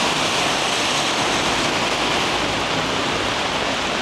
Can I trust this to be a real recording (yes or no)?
yes